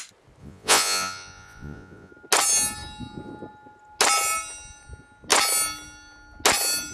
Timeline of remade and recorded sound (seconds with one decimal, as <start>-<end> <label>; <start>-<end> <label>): 0.0-0.4 recorded; 0.4-2.1 remade; 2.1-6.9 recorded